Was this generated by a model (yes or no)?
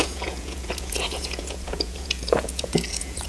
yes